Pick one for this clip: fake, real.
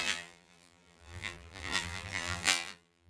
fake